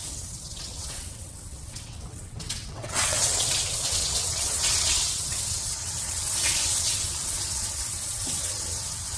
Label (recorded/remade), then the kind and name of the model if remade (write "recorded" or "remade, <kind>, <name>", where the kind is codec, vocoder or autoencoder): remade, vocoder, WaveNeXt